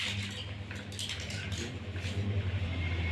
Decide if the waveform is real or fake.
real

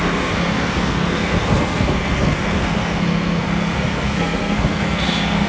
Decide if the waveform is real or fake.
fake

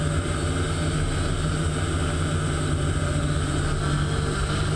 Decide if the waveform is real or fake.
real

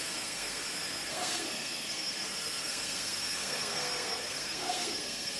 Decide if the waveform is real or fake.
fake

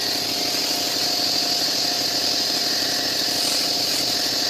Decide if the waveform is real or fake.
real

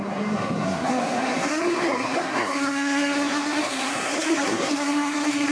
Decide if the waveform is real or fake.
fake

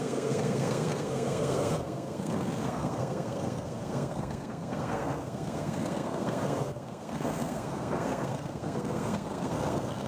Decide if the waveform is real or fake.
fake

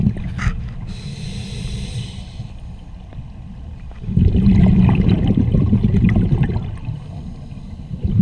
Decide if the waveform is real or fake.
real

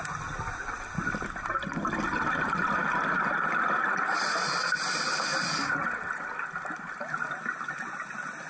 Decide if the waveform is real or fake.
real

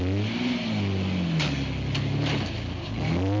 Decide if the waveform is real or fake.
real